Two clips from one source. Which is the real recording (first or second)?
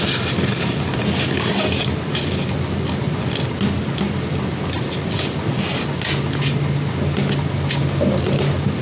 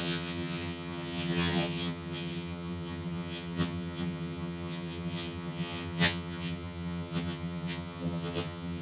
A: first